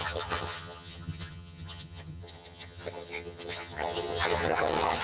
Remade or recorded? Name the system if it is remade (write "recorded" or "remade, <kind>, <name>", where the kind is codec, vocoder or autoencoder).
remade, vocoder, HiFi-GAN